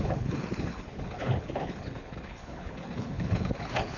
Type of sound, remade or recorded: remade